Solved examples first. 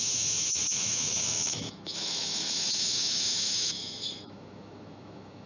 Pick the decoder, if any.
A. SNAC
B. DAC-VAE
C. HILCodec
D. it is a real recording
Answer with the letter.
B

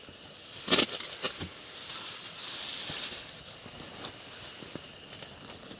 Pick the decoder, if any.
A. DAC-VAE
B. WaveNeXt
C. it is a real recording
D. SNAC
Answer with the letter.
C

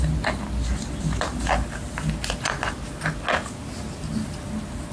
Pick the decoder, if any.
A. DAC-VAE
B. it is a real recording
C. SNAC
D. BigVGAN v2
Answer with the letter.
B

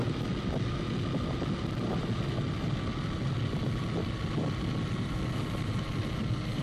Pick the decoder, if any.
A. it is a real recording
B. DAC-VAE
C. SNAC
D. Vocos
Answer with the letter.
A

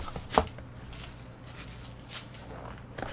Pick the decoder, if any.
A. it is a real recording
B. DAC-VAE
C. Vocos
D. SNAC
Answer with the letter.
A